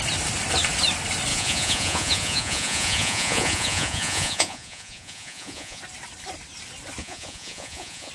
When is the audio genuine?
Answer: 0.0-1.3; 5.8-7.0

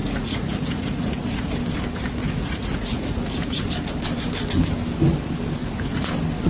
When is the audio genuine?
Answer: 1.5-2.2; 3.6-5.6; 6.1-6.5

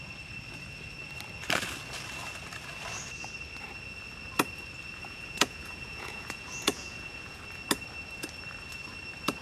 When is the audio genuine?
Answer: 0.0-5.0; 7.4-9.4

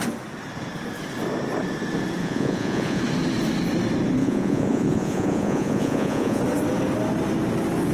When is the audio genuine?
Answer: 0.0-2.2; 3.0-4.2; 6.4-7.9

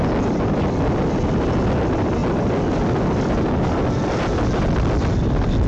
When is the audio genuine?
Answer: 0.0-5.7

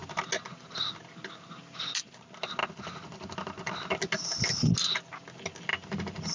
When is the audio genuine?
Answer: 0.0-6.3